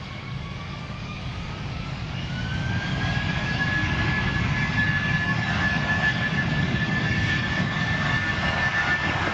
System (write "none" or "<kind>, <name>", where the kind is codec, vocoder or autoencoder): codec, DAC